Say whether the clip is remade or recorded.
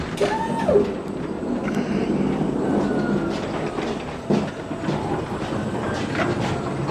recorded